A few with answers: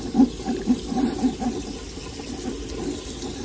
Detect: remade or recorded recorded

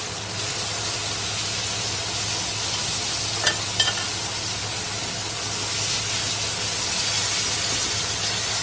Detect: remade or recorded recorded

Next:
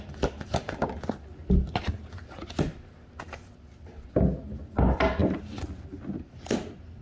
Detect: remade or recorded recorded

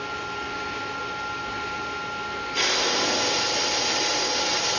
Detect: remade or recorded recorded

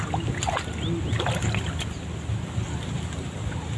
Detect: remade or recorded recorded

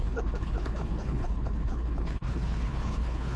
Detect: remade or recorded remade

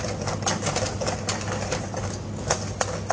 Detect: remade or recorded recorded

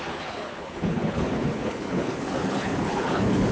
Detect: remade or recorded remade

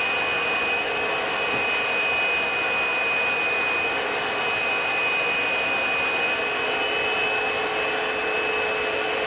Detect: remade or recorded recorded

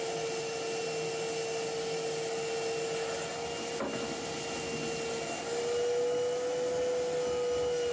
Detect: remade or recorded recorded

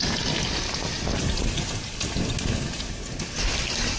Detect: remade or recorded recorded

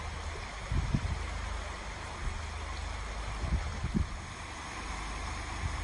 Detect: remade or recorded recorded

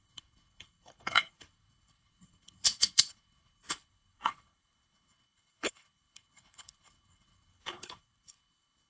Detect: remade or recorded remade